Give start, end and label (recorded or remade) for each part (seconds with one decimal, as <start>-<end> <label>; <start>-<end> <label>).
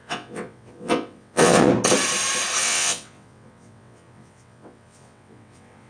0.0-1.7 remade; 1.7-2.6 recorded; 2.6-5.9 remade